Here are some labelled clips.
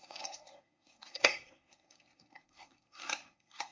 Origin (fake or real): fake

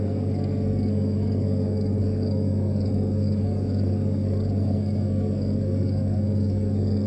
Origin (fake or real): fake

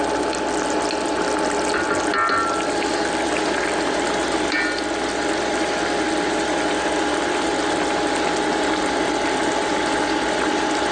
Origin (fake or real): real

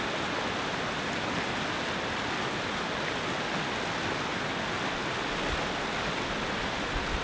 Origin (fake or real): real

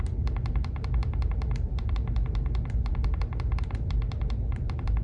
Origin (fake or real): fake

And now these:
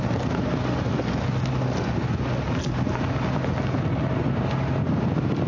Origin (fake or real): real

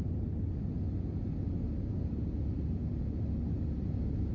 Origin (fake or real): real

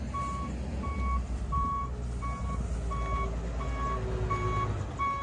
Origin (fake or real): real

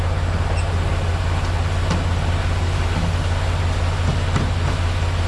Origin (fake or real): real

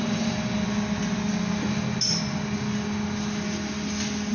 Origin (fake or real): real